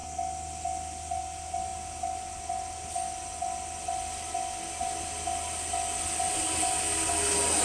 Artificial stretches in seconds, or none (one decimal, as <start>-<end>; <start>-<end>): none